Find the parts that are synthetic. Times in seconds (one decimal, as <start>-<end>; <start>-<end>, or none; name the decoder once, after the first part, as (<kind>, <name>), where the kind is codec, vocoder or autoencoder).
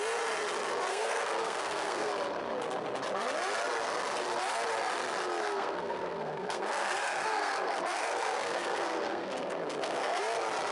0.9-2.1 (codec, SNAC); 5.4-10.2